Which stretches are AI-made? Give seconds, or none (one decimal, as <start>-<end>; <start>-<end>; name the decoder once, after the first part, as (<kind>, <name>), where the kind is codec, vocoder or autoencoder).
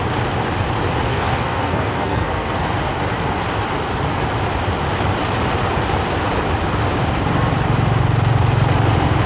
1.1-2.8 (codec, SNAC)